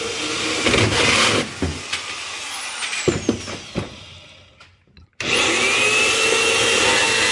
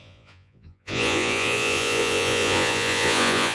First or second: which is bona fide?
first